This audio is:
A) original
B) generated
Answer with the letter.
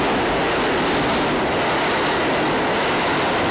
A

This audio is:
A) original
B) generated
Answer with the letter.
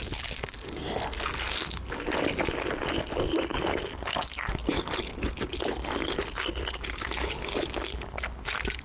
A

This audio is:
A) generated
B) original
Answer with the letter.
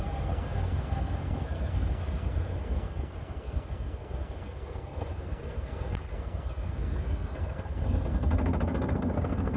A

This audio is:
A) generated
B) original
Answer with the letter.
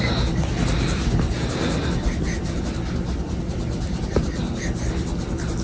B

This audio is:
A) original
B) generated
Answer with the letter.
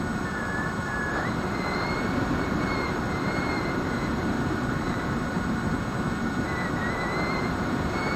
B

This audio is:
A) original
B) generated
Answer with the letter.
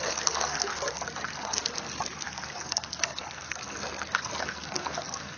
B